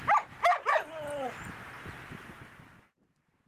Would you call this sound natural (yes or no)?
yes